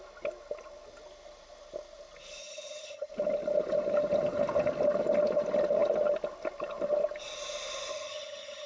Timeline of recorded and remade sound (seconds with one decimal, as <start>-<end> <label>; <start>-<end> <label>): 0.0-2.4 recorded; 2.4-3.1 remade; 3.1-7.9 recorded; 7.9-8.7 remade